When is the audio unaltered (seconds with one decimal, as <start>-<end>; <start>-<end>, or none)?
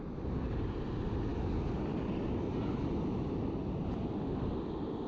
0.0-5.1